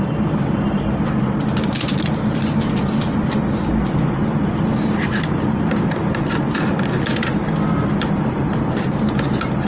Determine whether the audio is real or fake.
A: real